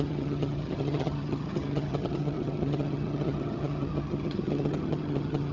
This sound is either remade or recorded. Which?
remade